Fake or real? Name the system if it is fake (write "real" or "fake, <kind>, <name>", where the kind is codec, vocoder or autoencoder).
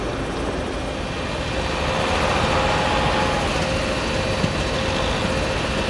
real